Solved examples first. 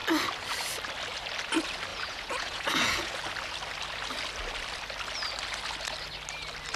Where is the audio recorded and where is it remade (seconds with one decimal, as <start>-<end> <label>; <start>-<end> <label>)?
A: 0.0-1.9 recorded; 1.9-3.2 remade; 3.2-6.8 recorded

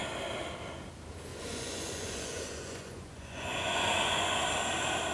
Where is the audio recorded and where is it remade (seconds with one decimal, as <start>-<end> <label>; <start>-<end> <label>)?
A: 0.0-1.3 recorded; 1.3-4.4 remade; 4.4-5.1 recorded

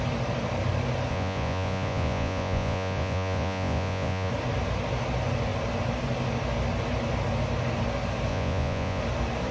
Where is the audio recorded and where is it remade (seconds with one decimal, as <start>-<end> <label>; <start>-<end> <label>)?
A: 0.0-1.1 recorded; 1.1-4.3 remade; 4.3-8.3 recorded; 8.3-9.0 remade; 9.0-9.5 recorded

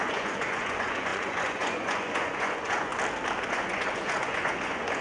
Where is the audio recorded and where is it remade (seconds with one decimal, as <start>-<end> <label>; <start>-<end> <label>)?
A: 0.0-2.9 remade; 2.9-3.5 recorded; 3.5-5.0 remade

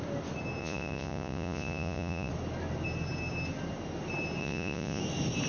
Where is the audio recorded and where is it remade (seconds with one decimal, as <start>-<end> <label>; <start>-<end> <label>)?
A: 0.0-0.6 recorded; 0.6-2.3 remade; 2.3-4.4 recorded; 4.4-5.0 remade; 5.0-5.5 recorded

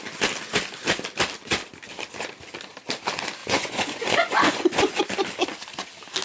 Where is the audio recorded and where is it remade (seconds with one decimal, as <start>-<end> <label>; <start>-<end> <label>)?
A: 0.0-3.4 recorded; 3.4-5.0 remade; 5.0-6.2 recorded

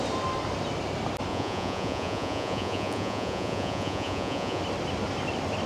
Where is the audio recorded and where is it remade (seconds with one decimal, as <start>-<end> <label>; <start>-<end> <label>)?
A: 0.0-1.3 recorded; 1.3-4.6 remade; 4.6-5.7 recorded

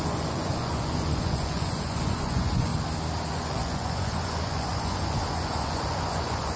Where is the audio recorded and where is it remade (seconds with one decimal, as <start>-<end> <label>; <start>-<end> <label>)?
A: 0.0-2.7 remade; 2.7-3.3 recorded; 3.3-6.6 remade